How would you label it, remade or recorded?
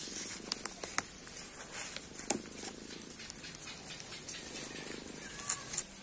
recorded